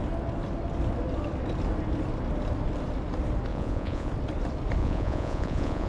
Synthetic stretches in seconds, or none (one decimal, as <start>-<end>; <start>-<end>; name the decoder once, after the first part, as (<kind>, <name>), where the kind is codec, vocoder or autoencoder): 3.5-4.1 (vocoder, Vocos); 4.8-5.9